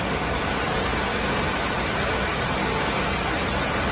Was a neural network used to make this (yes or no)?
no